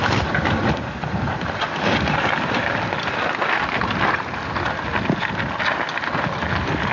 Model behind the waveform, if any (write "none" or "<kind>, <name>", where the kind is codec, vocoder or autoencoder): none